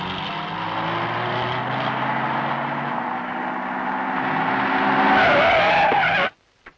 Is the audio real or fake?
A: real